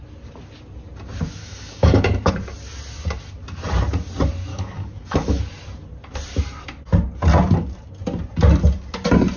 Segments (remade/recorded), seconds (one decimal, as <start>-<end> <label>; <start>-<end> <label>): 0.0-1.4 recorded; 1.4-2.3 remade; 2.3-4.5 recorded; 4.5-5.4 remade; 5.4-9.4 recorded